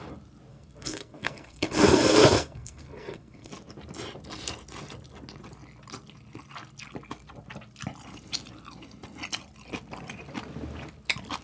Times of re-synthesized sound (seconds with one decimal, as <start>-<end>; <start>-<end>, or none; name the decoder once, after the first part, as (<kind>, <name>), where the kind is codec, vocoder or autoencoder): 0.5-3.5 (codec, SNAC)